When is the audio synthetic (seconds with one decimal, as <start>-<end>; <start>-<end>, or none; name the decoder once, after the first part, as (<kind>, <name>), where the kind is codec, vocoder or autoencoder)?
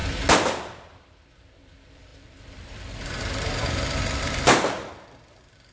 1.3-5.7 (vocoder, BigVGAN v2)